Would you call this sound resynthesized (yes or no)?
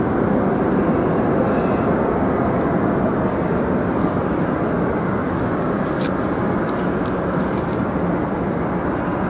no